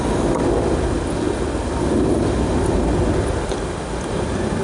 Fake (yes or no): no